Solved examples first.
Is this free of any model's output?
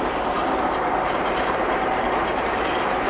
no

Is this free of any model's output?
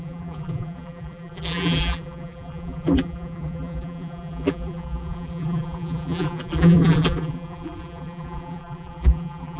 no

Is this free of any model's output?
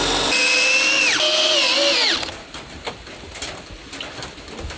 yes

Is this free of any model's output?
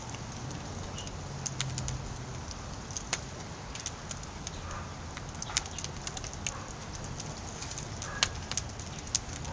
yes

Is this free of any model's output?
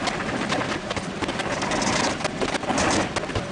yes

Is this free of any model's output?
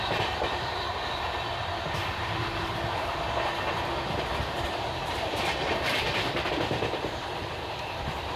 no